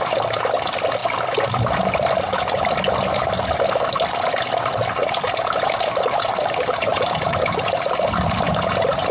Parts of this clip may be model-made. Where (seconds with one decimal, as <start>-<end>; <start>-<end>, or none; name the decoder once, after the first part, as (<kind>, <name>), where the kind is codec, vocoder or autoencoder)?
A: 5.0-9.1 (vocoder, BigVGAN v2)